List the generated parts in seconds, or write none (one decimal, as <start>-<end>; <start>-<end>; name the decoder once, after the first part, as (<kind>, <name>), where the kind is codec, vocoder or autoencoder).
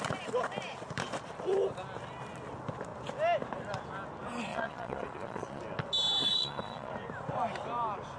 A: 4.5-5.6 (vocoder, Vocos); 6.2-6.9